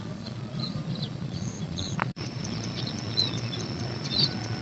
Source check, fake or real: fake